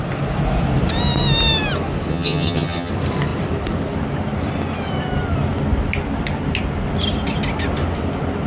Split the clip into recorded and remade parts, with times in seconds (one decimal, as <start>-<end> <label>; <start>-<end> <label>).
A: 0.0-2.1 recorded; 2.1-2.9 remade; 2.9-8.5 recorded